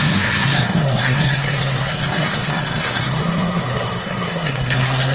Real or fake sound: fake